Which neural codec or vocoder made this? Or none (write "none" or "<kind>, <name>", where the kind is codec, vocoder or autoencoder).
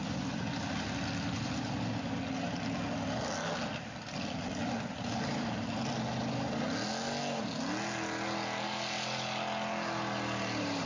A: none